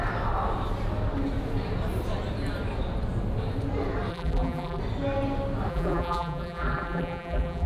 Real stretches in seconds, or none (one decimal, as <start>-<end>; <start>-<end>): 0.0-4.1; 4.8-5.7